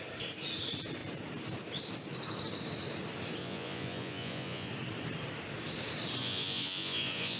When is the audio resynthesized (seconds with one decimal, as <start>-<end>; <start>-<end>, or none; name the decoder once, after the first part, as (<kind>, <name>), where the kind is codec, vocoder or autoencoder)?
3.4-4.7 (vocoder, Vocos); 6.2-7.4